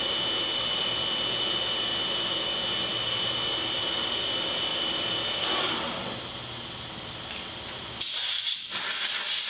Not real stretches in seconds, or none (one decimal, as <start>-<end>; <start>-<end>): none